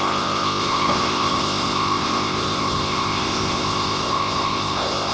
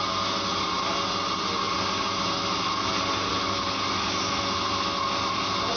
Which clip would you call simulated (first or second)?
first